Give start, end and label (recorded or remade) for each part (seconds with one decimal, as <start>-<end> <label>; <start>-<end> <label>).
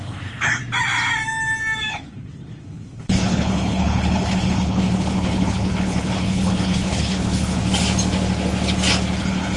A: 0.0-0.6 remade; 0.6-1.9 recorded; 1.9-7.6 remade; 7.6-9.2 recorded; 9.2-9.6 remade